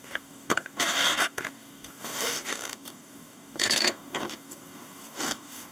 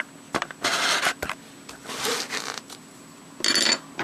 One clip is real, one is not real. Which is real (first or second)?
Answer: second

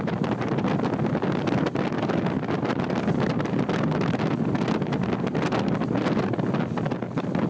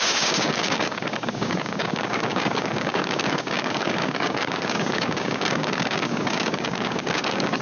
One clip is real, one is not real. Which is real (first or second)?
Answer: first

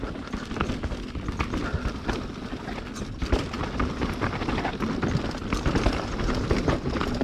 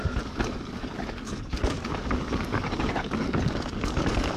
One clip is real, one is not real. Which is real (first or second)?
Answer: first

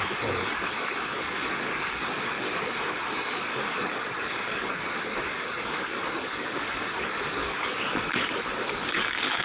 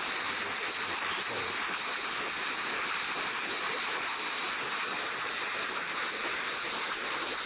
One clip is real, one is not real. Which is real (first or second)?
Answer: second